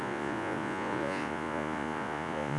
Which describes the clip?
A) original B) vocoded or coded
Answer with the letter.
B